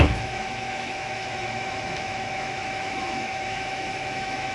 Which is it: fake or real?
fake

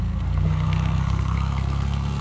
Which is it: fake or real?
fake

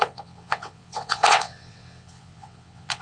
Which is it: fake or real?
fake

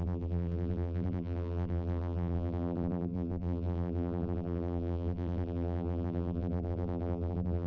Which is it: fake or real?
fake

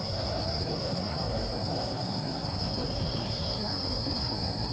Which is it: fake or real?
fake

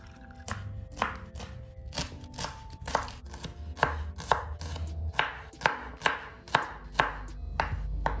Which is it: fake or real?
real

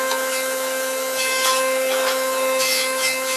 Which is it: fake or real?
fake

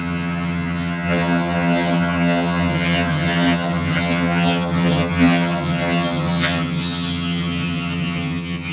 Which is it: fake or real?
fake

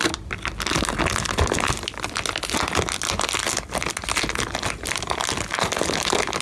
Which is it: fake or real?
real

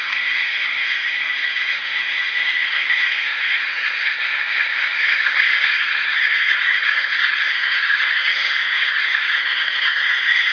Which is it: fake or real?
fake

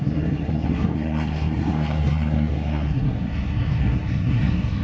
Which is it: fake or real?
fake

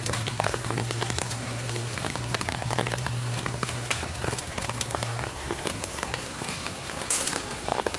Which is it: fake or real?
fake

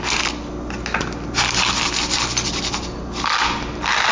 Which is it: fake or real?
real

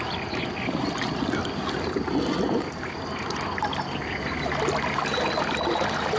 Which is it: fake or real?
real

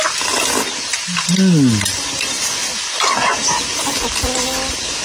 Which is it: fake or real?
real